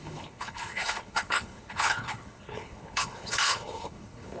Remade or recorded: remade